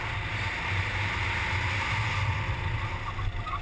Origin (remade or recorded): recorded